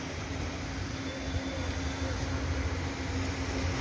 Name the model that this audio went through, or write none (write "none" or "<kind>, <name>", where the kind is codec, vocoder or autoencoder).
none